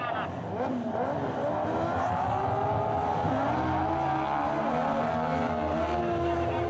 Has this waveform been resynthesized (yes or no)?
no